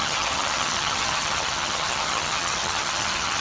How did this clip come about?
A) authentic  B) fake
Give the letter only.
B